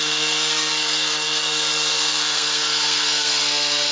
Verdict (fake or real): fake